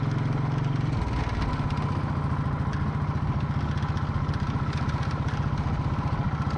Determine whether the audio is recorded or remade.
recorded